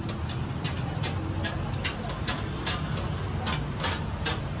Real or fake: real